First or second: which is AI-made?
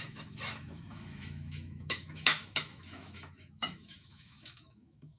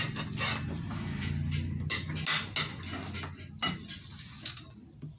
first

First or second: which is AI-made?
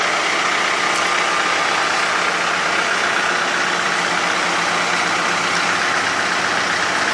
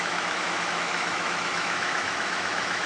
second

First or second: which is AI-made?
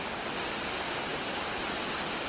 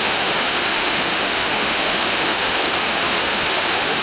second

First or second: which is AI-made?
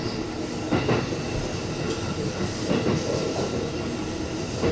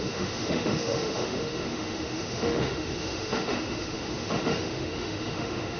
second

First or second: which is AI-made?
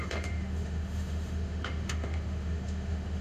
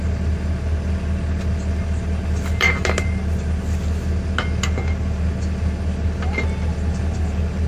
first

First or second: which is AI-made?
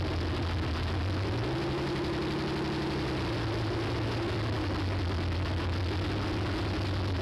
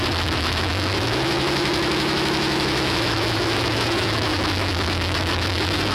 second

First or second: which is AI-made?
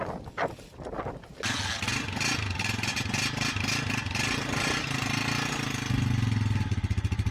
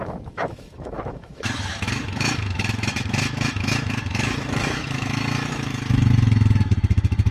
second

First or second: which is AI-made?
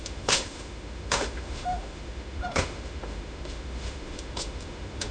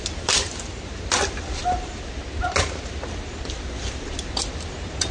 first